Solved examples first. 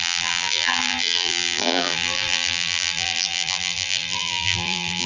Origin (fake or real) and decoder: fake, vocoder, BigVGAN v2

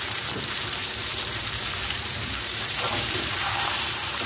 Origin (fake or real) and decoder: fake, vocoder, BigVGAN v2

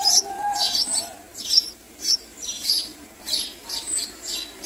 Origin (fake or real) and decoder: fake, vocoder, BigVGAN v2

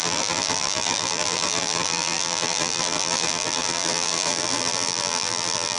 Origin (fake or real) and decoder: fake, vocoder, BigVGAN v2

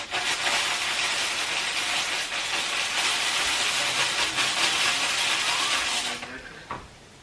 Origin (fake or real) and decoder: real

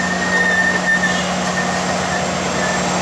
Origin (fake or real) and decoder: real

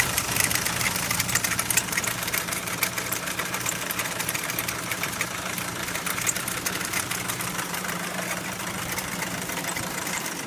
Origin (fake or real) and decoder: fake, vocoder, BigVGAN v2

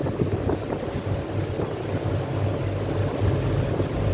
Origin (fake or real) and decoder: real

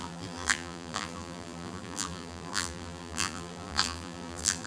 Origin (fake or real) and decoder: fake, vocoder, BigVGAN v2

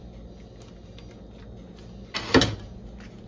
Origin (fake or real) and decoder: real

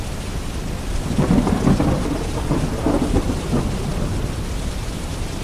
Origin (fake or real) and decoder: real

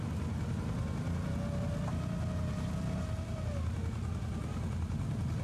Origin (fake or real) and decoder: real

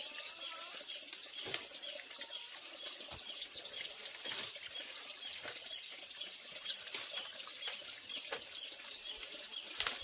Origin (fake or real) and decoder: fake, vocoder, BigVGAN v2